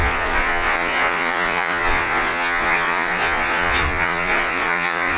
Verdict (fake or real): fake